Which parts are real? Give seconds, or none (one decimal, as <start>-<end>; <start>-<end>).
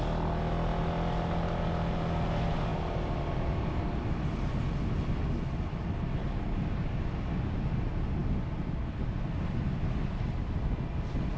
0.0-11.4